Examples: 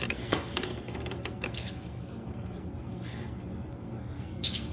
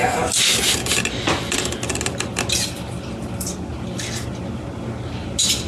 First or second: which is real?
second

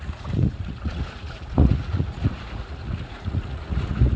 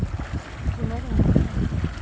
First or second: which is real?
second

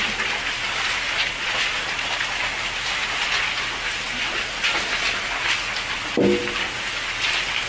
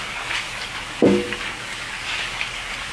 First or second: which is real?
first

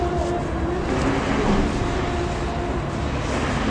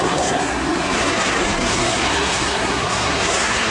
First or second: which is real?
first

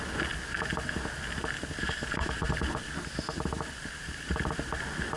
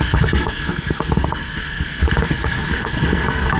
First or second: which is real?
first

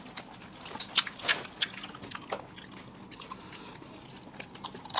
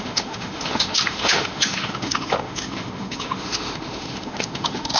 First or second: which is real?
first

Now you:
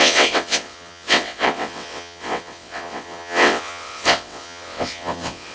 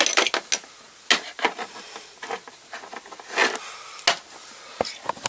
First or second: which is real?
second